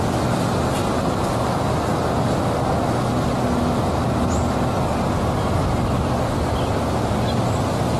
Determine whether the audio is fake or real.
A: real